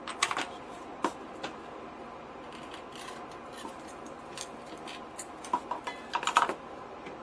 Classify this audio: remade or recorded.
recorded